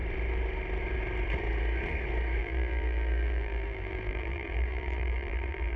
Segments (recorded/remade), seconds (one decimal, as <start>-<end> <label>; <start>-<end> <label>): 0.0-2.4 recorded; 2.4-5.8 remade